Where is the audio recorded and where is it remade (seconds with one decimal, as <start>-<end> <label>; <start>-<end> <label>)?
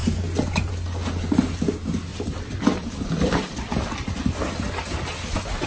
0.0-2.1 recorded; 2.1-4.5 remade; 4.5-5.7 recorded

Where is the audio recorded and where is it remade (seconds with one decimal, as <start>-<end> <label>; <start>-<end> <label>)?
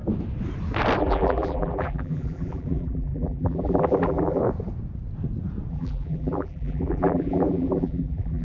0.0-1.0 recorded; 1.0-4.4 remade; 4.4-5.7 recorded; 5.7-8.4 remade